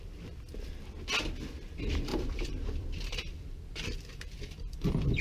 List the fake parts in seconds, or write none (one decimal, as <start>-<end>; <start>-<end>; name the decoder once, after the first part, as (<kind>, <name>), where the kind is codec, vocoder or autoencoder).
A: 2.1-5.2 (vocoder, BigVGAN v2)